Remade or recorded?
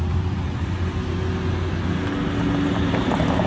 recorded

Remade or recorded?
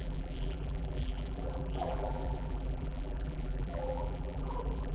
remade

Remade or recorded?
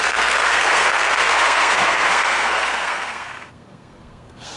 remade